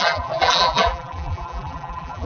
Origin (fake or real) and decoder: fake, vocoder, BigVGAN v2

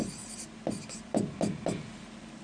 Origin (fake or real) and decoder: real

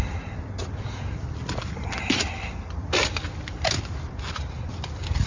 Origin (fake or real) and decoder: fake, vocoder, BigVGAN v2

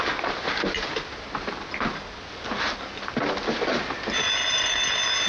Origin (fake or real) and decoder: real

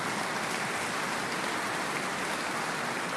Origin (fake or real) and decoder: real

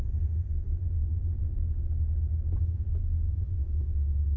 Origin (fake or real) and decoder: real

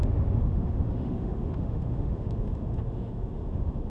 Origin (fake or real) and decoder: fake, autoencoder, DAC-VAE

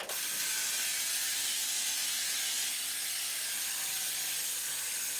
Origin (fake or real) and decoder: real